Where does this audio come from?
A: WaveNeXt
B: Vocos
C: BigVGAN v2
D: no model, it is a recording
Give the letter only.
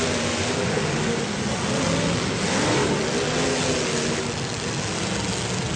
D